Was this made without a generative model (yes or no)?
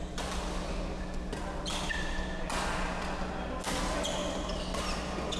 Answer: yes